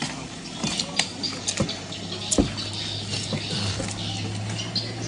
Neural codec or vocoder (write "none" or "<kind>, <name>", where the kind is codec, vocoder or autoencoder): none